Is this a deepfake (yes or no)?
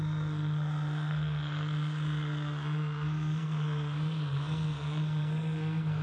yes